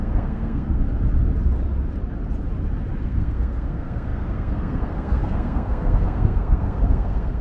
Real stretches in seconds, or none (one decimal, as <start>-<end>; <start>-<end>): 0.8-3.0